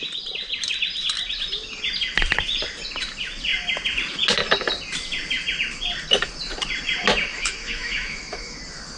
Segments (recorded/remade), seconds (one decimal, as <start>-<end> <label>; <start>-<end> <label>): 0.0-7.3 recorded; 7.3-8.6 remade; 8.6-9.0 recorded